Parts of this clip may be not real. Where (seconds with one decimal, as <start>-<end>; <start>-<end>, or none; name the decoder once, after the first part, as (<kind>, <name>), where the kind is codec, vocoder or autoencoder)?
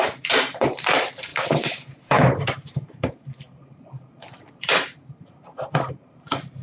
0.0-6.6 (vocoder, BigVGAN v2)